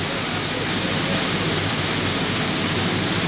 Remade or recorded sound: recorded